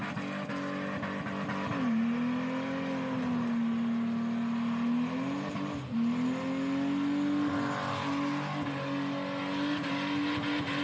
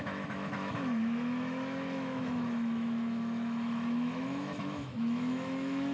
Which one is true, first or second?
first